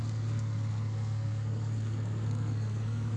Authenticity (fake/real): fake